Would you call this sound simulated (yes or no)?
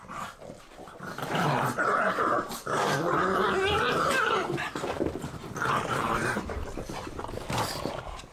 yes